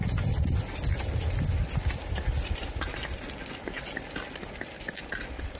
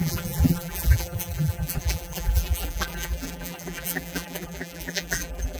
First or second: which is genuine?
first